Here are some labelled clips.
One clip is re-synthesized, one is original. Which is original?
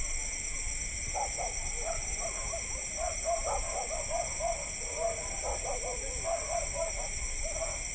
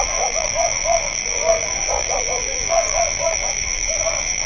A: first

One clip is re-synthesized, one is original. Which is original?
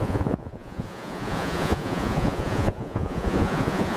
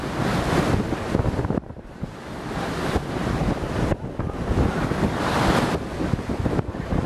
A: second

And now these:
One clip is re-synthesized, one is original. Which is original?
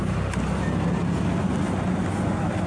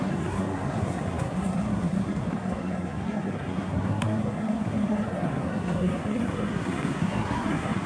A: first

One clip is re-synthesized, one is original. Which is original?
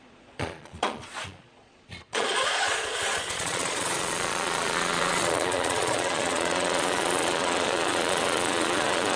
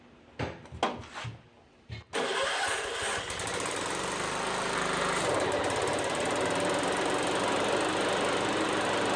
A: second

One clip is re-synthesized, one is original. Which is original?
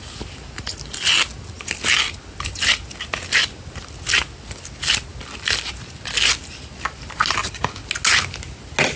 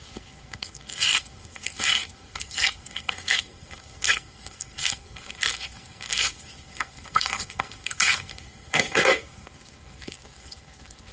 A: first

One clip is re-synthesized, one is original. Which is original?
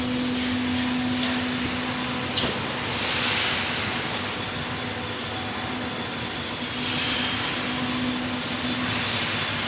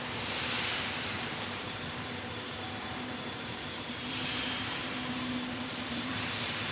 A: first